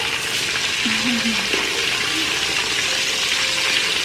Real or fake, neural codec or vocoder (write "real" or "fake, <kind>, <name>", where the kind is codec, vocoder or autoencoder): real